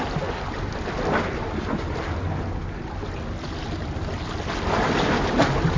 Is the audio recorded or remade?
recorded